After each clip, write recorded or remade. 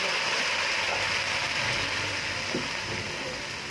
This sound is recorded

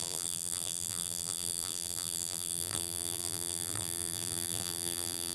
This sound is remade